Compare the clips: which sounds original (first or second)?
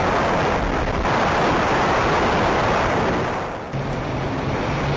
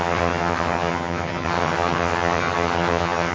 first